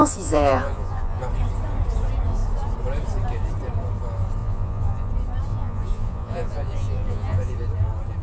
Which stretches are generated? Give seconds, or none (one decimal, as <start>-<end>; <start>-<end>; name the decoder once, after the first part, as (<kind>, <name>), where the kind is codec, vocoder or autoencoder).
0.0-1.2 (vocoder, Vocos); 4.4-5.1; 5.5-7.5